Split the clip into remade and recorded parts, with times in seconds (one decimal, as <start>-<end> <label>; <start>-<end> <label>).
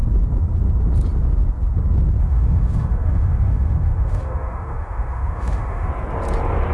0.0-2.2 recorded; 2.2-5.9 remade; 5.9-6.7 recorded